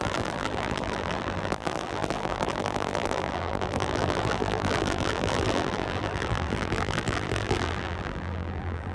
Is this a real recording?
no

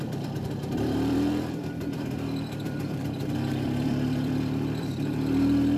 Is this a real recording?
no